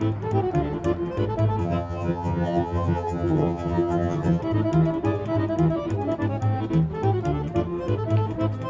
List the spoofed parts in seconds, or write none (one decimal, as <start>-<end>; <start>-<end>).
1.6-4.4

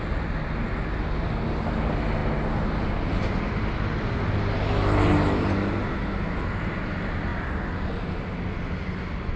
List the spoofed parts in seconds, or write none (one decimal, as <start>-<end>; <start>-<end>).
none